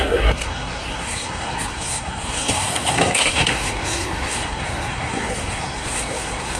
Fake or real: fake